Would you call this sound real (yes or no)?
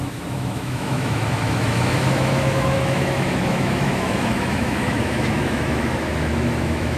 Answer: no